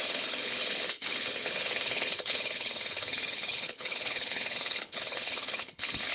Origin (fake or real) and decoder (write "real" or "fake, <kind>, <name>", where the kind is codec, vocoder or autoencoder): fake, codec, HILCodec